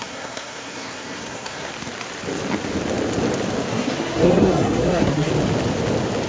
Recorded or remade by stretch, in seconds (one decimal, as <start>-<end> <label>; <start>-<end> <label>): 0.0-1.7 remade; 1.7-3.7 recorded; 3.7-5.3 remade; 5.3-6.3 recorded